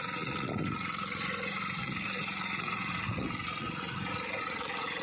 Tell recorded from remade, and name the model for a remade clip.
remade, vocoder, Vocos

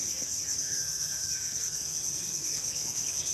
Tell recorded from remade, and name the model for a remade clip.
remade, codec, SNAC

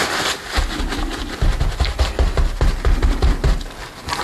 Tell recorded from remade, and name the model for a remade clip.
recorded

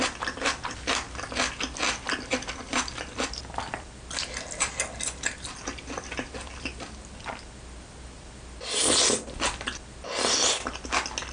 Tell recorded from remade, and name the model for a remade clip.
recorded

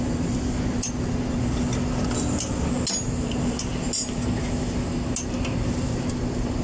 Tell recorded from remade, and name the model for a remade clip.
recorded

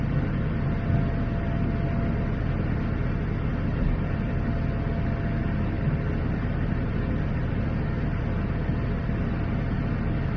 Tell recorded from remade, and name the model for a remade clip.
recorded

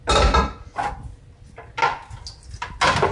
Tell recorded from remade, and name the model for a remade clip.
recorded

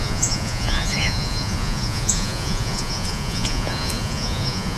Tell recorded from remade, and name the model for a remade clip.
remade, vocoder, Vocos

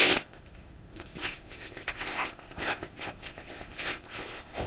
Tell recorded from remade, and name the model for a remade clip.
remade, codec, ZipCodec